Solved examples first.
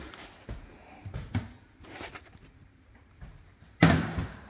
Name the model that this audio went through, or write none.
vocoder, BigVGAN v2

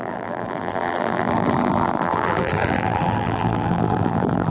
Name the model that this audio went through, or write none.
vocoder, BigVGAN v2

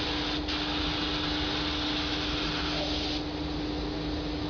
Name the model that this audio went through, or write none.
none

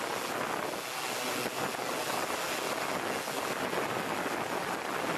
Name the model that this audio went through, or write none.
none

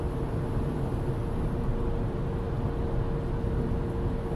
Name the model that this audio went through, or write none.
none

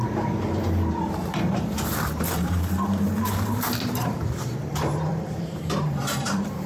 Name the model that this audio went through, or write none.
vocoder, BigVGAN v2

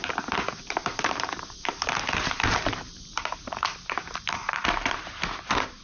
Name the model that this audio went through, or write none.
vocoder, BigVGAN v2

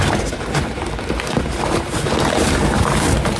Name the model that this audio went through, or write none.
vocoder, BigVGAN v2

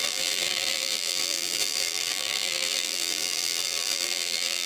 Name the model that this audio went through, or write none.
vocoder, BigVGAN v2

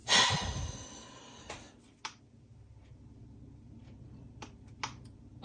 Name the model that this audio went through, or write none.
none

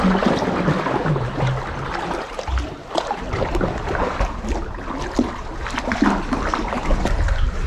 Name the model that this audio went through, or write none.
none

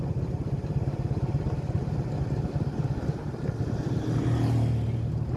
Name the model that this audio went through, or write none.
none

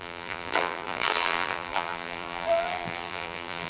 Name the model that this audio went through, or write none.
vocoder, BigVGAN v2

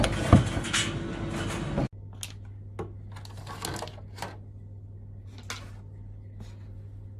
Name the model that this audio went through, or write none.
none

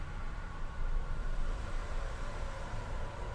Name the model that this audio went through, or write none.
vocoder, BigVGAN v2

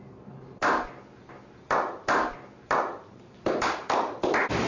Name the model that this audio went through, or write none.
vocoder, BigVGAN v2